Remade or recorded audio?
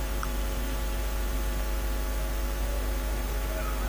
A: remade